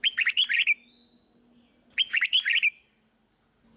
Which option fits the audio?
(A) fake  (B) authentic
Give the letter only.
B